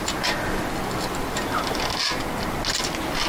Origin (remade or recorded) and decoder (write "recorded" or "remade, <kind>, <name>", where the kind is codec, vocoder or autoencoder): recorded